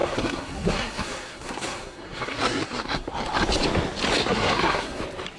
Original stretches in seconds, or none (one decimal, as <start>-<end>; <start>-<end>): 3.1-4.2; 5.0-5.4

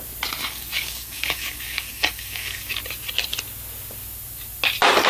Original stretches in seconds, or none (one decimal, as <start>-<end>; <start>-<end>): 0.0-0.4; 2.8-5.1